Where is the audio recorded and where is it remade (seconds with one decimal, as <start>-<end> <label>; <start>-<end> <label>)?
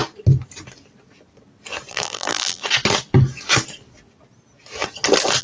0.0-1.9 recorded; 1.9-2.6 remade; 2.6-5.4 recorded